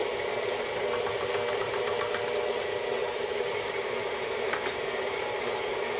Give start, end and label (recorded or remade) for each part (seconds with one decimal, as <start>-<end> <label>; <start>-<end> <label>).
0.0-3.0 recorded; 3.0-5.6 remade; 5.6-6.0 recorded